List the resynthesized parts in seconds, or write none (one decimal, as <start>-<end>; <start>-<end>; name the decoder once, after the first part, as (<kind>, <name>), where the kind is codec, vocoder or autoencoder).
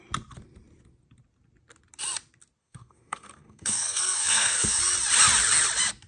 2.6-4.8 (codec, SNAC)